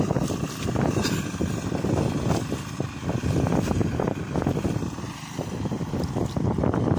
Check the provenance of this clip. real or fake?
fake